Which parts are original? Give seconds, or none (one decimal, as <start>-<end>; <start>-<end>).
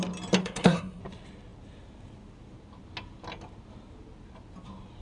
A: 0.0-0.4; 1.0-5.0